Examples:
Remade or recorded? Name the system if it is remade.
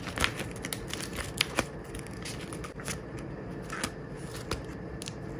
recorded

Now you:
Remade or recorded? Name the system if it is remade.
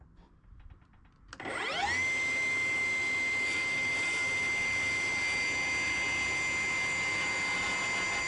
recorded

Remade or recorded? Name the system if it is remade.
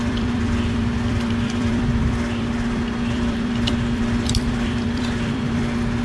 remade, vocoder, BigVGAN v2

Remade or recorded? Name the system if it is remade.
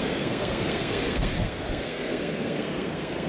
remade, codec, SNAC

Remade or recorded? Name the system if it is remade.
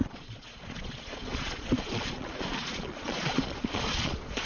remade, vocoder, Vocos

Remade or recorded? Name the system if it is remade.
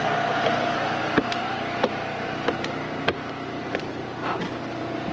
recorded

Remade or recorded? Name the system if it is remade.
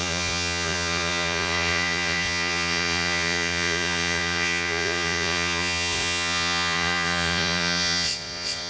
remade, vocoder, Vocos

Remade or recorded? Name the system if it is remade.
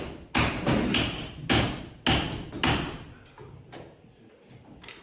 recorded